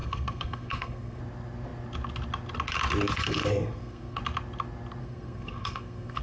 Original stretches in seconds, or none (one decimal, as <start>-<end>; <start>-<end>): 1.2-3.2; 4.2-5.0